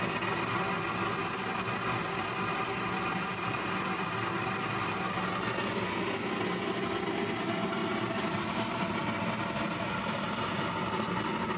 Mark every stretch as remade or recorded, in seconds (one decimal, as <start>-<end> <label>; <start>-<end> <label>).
0.0-7.8 recorded; 7.8-8.8 remade; 8.8-11.6 recorded